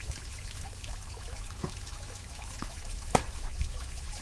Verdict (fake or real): fake